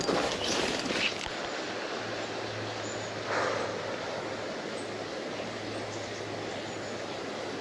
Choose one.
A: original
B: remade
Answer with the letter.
A